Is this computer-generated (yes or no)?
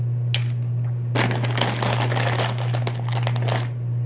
no